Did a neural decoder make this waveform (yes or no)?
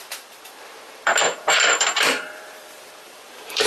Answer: yes